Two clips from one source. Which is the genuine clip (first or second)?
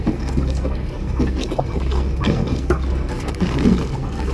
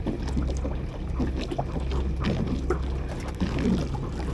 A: second